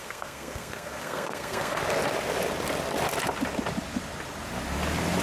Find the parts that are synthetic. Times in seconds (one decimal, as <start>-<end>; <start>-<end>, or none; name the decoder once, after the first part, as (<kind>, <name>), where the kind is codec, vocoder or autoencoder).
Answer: 0.0-1.8 (codec, SNAC)